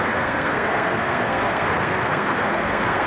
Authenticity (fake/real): fake